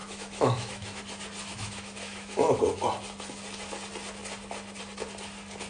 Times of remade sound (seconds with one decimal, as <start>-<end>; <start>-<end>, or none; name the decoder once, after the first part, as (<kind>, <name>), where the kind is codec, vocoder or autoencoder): 0.0-1.0 (autoencoder, DAC-VAE); 1.5-2.6